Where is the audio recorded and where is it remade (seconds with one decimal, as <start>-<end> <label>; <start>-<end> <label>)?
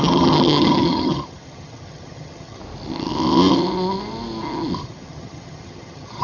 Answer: 0.0-2.6 remade; 2.6-4.8 recorded; 4.8-6.2 remade